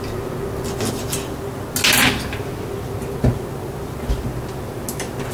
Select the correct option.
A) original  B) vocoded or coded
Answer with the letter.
A